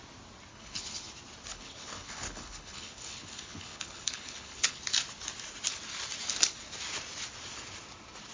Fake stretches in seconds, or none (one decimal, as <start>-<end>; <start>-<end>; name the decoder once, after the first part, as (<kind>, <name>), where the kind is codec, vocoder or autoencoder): 0.5-1.1 (codec, HILCodec); 1.5-4.8